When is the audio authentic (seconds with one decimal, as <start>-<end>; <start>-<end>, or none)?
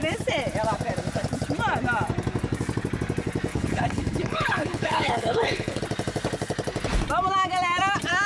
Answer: 0.0-3.5; 5.8-8.3